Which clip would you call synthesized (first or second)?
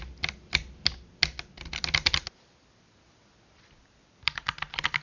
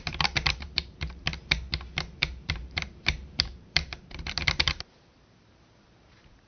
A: second